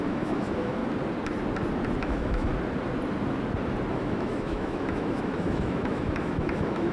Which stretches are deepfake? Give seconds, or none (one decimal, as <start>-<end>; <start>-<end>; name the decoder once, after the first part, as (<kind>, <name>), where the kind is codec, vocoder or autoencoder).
0.0-0.8 (autoencoder, DAC-VAE); 2.0-2.5; 3.9-6.9